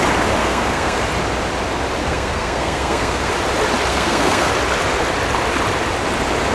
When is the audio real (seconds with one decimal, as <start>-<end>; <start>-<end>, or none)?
0.0-0.4; 1.0-2.0; 3.3-3.9; 4.5-6.5